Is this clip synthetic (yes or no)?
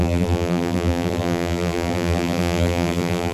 yes